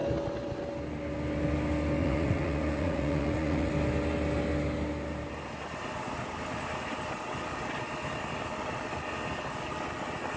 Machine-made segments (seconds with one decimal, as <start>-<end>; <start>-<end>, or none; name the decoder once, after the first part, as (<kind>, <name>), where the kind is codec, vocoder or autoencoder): 2.0-3.7 (vocoder, Vocos)

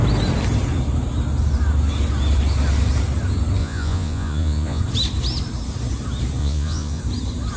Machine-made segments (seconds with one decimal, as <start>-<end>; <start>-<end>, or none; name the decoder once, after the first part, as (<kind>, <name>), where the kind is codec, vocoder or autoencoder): 3.6-4.8 (vocoder, Vocos); 6.4-7.0

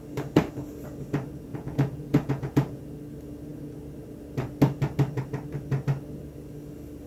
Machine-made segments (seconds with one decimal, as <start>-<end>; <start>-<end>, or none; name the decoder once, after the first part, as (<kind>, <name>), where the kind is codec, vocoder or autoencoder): 1.5-2.8 (vocoder, Vocos)

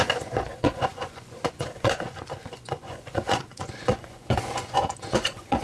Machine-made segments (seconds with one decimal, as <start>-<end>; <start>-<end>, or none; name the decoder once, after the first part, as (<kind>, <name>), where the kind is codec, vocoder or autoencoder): 0.0-5.6 (vocoder, Vocos)

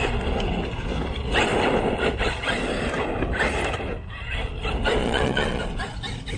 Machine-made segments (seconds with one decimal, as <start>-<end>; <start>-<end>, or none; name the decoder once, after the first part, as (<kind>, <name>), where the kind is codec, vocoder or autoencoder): 5.0-5.6 (vocoder, Vocos)

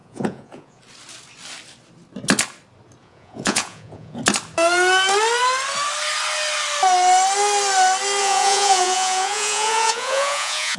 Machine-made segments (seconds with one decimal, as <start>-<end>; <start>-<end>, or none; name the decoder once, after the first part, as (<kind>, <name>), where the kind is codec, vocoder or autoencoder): 0.0-0.8 (vocoder, Vocos); 3.0-4.2; 8.2-10.8

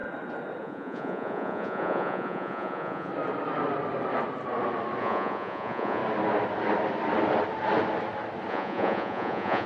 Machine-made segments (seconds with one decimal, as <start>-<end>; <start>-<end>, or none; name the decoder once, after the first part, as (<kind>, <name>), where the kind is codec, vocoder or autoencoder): 0.6-3.1 (vocoder, Vocos); 5.0-6.0; 8.5-9.7

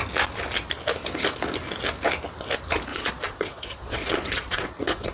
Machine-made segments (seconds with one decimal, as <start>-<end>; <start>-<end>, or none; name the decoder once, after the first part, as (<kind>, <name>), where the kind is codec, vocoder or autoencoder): 2.9-5.1 (vocoder, Vocos)